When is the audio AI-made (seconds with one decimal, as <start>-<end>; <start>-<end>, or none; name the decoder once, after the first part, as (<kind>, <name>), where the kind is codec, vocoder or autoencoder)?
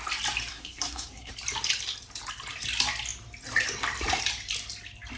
0.5-1.3 (codec, SNAC)